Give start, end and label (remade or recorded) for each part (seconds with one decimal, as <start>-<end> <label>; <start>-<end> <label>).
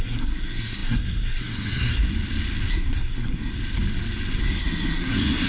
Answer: 0.0-2.1 remade; 2.1-2.7 recorded; 2.7-3.5 remade; 3.5-4.4 recorded; 4.4-5.5 remade